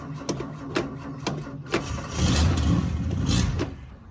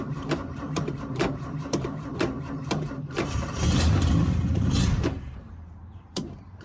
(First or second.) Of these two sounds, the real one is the first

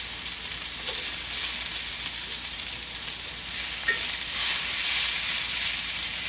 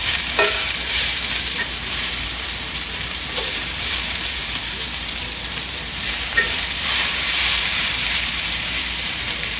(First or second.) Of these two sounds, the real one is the first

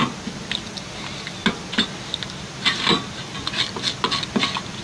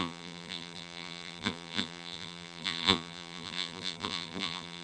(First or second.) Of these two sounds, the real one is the first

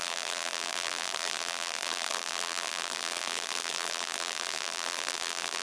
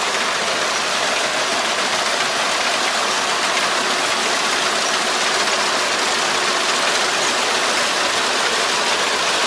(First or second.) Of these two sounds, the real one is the second